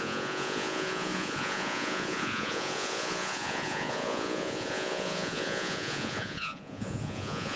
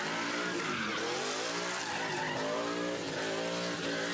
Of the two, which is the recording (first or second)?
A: second